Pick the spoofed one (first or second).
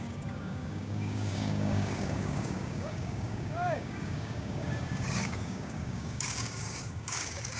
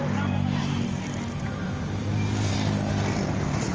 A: first